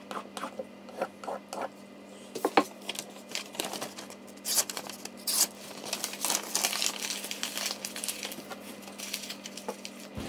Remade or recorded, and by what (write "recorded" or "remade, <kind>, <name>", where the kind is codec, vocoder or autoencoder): recorded